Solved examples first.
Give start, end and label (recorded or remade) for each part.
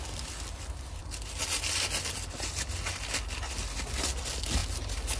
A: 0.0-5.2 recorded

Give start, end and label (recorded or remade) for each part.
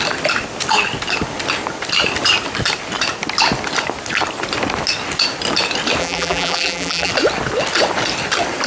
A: 0.0-6.0 recorded; 6.0-7.1 remade; 7.1-8.7 recorded